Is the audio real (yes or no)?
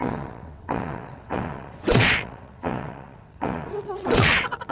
no